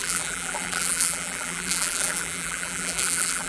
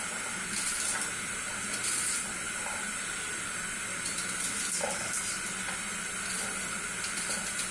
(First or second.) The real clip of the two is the second